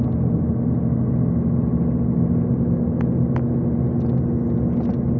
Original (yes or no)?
yes